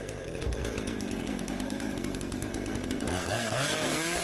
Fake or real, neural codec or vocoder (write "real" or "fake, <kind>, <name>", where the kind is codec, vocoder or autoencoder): fake, codec, SNAC